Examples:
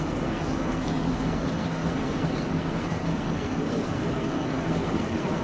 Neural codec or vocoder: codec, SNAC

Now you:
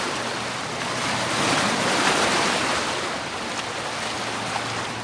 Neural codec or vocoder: none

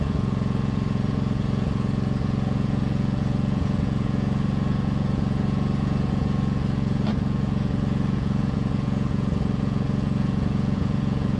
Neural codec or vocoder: vocoder, Vocos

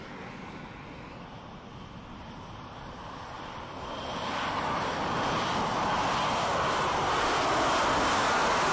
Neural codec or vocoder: none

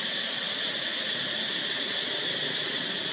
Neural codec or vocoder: none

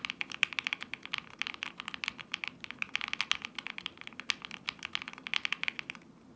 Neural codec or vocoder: none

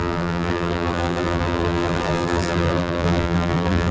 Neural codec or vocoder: vocoder, BigVGAN v2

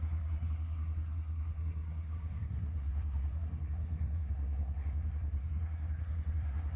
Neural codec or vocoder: codec, SNAC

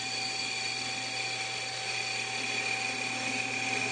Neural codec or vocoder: none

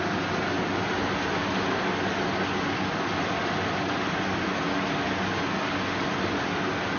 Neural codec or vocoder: none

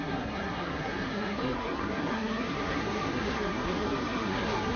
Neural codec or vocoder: codec, SNAC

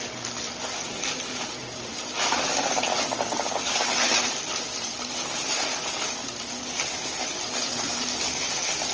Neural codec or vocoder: none